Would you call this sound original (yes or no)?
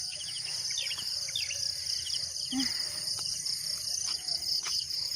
yes